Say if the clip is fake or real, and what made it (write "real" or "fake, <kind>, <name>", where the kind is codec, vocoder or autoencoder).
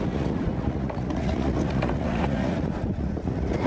fake, vocoder, Vocos